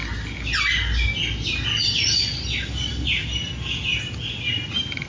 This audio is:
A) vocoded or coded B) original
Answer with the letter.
B